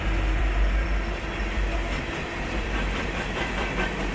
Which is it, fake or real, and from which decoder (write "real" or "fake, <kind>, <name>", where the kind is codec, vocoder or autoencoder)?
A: fake, vocoder, BigVGAN v2